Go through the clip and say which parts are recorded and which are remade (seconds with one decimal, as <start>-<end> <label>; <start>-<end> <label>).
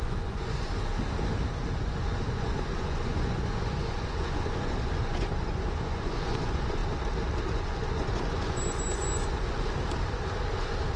0.0-0.9 remade; 0.9-1.8 recorded; 1.8-6.8 remade; 6.8-7.5 recorded; 7.5-9.7 remade; 9.7-11.0 recorded